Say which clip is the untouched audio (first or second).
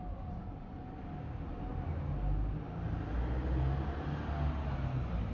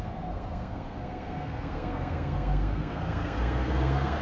first